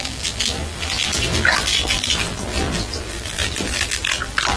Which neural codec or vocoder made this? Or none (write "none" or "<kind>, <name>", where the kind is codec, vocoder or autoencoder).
vocoder, BigVGAN v2